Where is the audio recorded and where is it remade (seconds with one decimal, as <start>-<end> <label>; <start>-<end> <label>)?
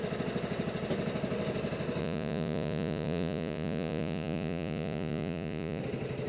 0.0-2.0 recorded; 2.0-5.8 remade; 5.8-6.3 recorded